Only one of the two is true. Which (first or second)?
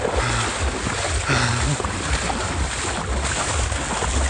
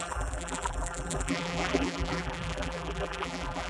first